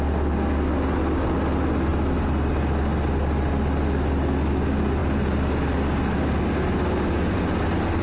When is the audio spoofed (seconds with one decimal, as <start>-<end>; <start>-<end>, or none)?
none

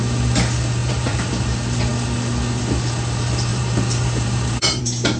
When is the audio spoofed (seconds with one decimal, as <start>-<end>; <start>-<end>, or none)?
0.8-1.3; 3.5-4.8

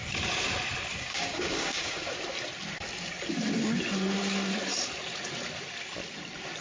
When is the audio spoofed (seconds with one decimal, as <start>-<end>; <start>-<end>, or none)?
0.9-2.1

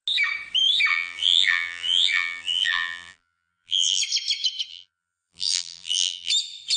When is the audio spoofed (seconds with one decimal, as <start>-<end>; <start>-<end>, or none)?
0.9-4.0; 4.7-6.3

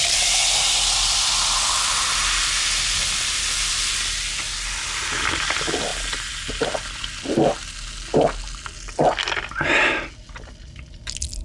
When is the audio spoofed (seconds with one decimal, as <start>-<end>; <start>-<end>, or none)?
none

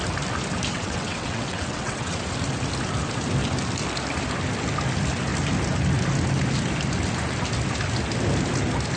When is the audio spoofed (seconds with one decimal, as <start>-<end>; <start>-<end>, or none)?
0.7-2.2